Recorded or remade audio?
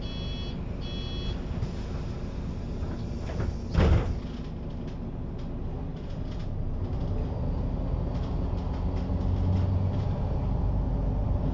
recorded